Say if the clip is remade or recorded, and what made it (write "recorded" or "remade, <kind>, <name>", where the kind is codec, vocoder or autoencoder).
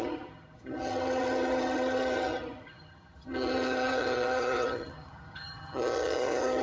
remade, vocoder, HiFi-GAN